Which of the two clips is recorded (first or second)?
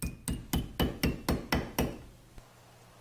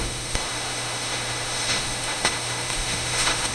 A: first